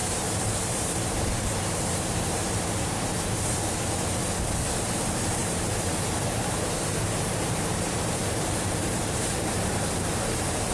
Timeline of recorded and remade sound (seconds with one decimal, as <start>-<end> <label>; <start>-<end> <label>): 0.0-3.6 remade; 3.6-5.4 recorded; 5.4-10.2 remade; 10.2-10.7 recorded